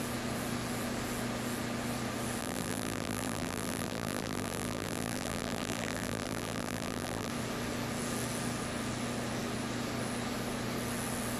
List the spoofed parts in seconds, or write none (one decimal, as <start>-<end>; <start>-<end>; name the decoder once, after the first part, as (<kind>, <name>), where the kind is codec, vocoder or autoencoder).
2.4-7.3 (vocoder, BigVGAN v2)